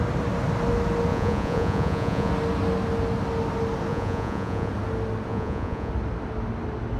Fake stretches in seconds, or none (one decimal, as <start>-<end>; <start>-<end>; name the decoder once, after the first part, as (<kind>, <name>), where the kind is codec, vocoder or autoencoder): 1.1-2.3 (vocoder, Vocos); 3.9-4.7; 5.3-5.9